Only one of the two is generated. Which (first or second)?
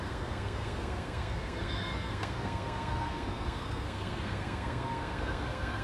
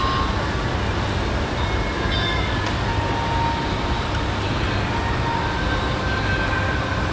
first